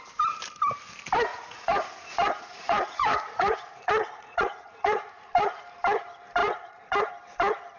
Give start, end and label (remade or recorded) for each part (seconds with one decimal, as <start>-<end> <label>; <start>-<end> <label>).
0.0-1.3 recorded; 1.3-5.6 remade; 5.6-6.4 recorded; 6.4-7.1 remade; 7.1-7.8 recorded